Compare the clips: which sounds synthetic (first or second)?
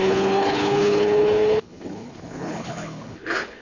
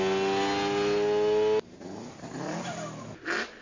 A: first